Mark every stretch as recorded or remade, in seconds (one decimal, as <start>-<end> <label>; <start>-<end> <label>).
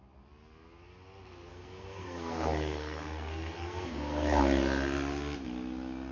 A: 0.0-1.5 recorded; 1.5-4.4 remade; 4.4-6.1 recorded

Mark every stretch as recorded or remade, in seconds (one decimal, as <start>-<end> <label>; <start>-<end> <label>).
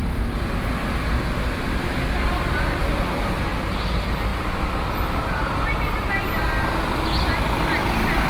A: 0.0-8.3 recorded